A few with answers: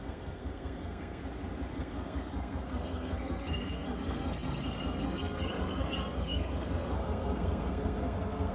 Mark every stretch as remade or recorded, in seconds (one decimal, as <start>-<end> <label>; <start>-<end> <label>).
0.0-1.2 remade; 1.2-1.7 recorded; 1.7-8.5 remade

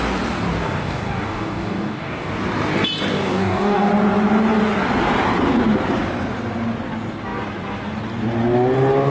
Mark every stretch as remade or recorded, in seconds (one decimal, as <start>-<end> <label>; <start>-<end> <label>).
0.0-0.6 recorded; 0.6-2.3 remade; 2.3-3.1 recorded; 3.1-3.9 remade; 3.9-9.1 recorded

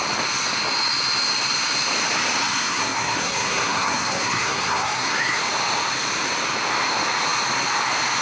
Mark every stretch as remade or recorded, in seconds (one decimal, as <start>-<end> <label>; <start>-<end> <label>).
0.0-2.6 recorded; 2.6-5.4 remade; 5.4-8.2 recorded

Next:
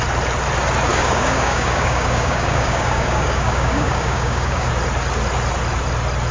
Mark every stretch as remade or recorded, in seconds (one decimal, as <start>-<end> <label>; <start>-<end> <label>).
0.0-0.9 recorded; 0.9-4.7 remade; 4.7-6.3 recorded

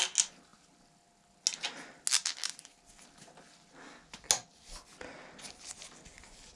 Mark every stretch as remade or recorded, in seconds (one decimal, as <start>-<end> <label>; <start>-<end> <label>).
0.0-6.6 recorded

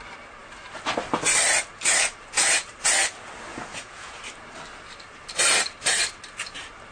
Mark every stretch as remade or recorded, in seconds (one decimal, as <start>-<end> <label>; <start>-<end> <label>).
0.0-3.5 recorded; 3.5-4.2 remade; 4.2-6.9 recorded

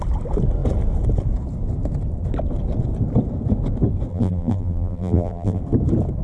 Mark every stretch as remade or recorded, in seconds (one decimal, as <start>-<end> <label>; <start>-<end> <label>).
0.0-4.1 recorded; 4.1-5.6 remade; 5.6-6.2 recorded

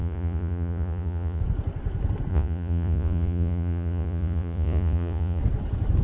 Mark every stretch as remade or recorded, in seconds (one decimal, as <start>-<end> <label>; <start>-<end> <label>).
0.0-1.4 remade; 1.4-2.3 recorded; 2.3-5.4 remade; 5.4-6.0 recorded